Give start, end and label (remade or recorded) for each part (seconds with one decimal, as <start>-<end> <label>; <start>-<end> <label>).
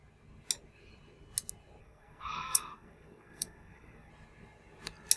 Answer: 0.0-1.8 recorded; 1.8-4.1 remade; 4.1-5.2 recorded